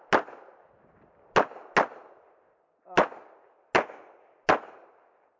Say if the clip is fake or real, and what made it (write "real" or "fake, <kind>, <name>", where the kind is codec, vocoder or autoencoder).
real